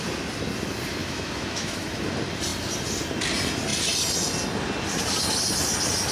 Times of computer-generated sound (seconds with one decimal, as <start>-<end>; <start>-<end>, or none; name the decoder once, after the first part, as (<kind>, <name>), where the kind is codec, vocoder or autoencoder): 1.0-2.0 (autoencoder, DAC-VAE)

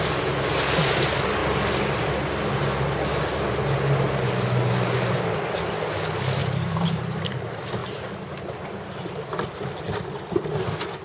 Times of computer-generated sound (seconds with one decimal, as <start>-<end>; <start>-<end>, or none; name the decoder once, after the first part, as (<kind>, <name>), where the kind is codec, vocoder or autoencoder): 6.4-7.2 (vocoder, BigVGAN v2)